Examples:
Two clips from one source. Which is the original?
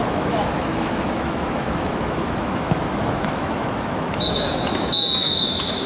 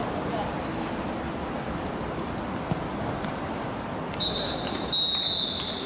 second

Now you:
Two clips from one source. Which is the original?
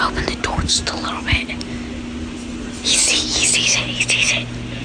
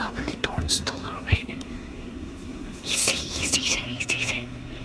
first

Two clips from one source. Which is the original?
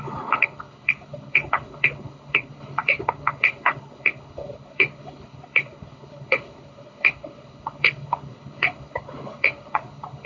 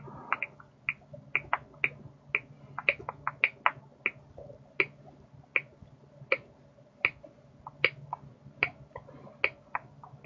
second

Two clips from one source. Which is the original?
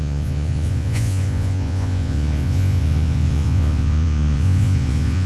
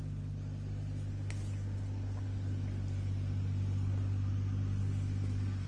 second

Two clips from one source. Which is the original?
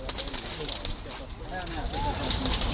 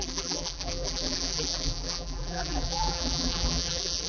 first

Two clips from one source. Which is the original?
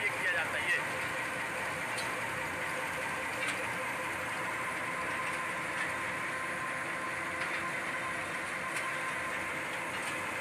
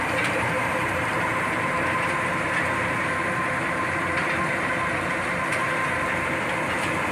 first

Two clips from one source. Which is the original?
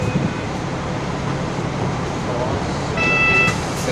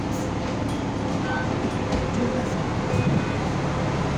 second